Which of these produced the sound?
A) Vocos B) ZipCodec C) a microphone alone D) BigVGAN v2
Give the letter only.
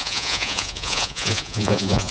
A